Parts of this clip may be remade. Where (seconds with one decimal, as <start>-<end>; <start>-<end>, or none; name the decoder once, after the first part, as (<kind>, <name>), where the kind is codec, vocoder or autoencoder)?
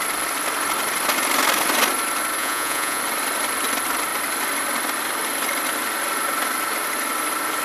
2.4-3.0 (vocoder, Vocos)